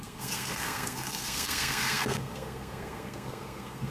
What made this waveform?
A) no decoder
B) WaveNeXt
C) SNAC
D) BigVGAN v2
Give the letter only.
C